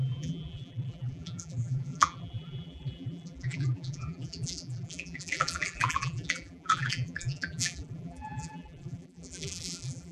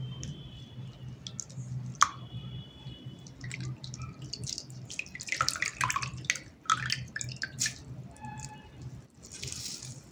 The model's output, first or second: first